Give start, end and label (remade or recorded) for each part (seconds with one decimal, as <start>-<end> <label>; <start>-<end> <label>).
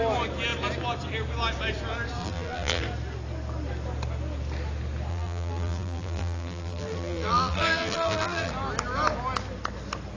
0.0-2.2 recorded; 2.2-2.8 remade; 2.8-5.1 recorded; 5.1-8.5 remade; 8.5-10.2 recorded